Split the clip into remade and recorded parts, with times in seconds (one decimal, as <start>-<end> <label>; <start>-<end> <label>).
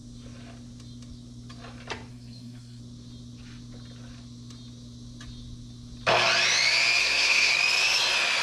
0.0-2.1 recorded; 2.1-2.8 remade; 2.8-7.0 recorded; 7.0-7.5 remade; 7.5-8.4 recorded